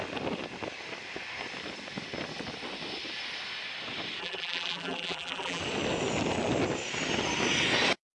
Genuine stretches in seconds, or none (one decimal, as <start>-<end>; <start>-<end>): 0.0-4.2; 5.6-8.1